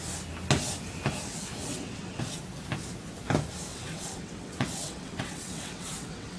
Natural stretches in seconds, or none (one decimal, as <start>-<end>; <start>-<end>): 0.0-1.7; 2.4-3.7